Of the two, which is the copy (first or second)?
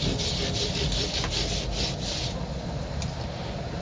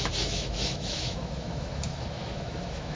second